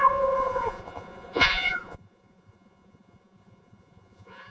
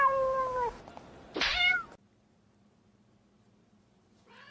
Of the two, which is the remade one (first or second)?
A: first